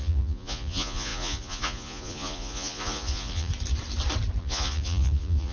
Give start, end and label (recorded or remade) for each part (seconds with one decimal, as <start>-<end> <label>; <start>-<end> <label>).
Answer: 0.0-3.5 remade; 3.5-4.4 recorded; 4.4-5.5 remade